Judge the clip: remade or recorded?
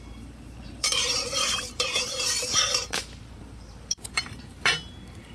remade